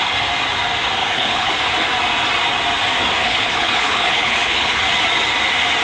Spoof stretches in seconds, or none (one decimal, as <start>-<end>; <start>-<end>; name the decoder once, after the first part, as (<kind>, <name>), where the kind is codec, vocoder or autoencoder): 1.0-1.5 (codec, HILCodec); 3.2-4.8